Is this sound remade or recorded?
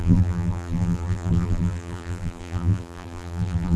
remade